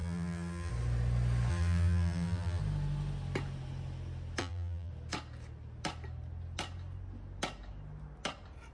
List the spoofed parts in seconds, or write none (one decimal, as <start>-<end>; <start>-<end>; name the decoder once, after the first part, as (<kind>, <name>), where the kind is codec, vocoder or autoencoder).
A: 0.0-0.7 (vocoder, BigVGAN v2); 1.5-2.6; 4.4-4.9